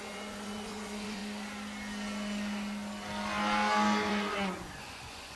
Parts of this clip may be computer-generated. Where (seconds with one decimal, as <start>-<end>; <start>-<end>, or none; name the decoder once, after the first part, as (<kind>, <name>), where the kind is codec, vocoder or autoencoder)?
0.0-1.2 (vocoder, Vocos); 4.1-5.4